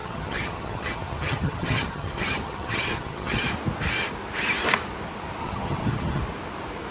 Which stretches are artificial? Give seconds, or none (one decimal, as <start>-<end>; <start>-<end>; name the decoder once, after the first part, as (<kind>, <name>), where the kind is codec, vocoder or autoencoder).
0.0-3.4 (vocoder, HiFi-GAN); 5.4-6.2